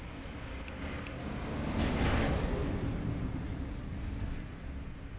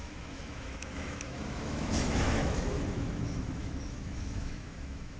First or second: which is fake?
second